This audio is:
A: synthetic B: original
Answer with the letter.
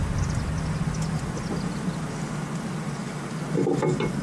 B